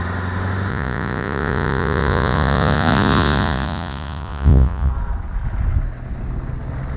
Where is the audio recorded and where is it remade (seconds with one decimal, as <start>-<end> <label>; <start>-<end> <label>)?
0.0-0.7 recorded; 0.7-4.9 remade; 4.9-7.0 recorded